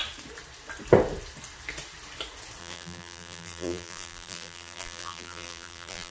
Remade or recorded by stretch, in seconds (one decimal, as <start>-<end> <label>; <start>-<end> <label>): 0.0-2.6 recorded; 2.6-6.1 remade